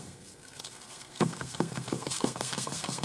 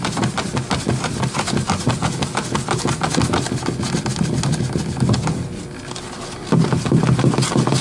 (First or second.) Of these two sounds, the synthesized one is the first